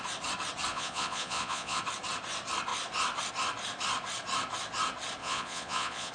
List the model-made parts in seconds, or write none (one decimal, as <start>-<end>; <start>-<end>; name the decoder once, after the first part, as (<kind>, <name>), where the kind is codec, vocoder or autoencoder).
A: 0.7-1.8 (vocoder, Vocos); 5.2-6.1